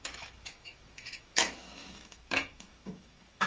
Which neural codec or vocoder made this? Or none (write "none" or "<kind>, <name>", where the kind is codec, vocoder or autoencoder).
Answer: autoencoder, DAC-VAE